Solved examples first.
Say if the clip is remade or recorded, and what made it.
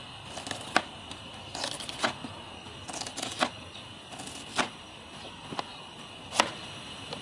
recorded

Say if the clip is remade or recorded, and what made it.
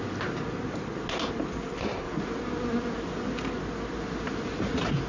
recorded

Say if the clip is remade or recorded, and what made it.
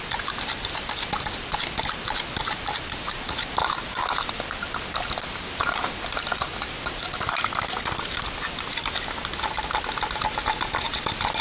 recorded